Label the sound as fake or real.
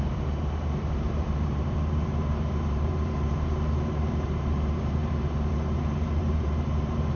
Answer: fake